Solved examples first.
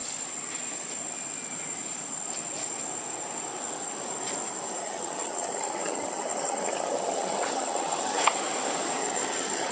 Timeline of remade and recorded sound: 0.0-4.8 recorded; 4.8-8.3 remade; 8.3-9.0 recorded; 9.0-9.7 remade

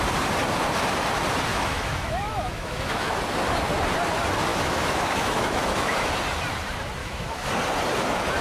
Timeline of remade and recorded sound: 0.0-1.5 recorded; 1.5-3.1 remade; 3.1-4.5 recorded; 4.5-6.1 remade; 6.1-7.0 recorded; 7.0-7.5 remade; 7.5-8.4 recorded

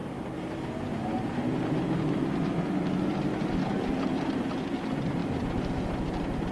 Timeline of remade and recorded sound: 0.0-2.1 remade; 2.1-5.2 recorded; 5.2-5.7 remade; 5.7-6.5 recorded